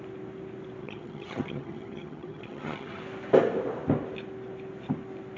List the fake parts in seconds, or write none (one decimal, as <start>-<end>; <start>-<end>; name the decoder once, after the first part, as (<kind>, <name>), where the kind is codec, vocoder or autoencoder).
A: 0.8-3.0 (vocoder, HiFi-GAN)